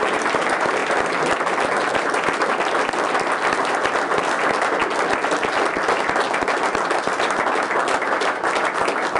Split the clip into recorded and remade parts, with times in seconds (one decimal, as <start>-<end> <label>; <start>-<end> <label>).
0.0-9.2 recorded